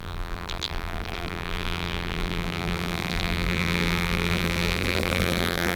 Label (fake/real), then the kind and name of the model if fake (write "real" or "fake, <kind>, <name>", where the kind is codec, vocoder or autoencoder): fake, vocoder, BigVGAN v2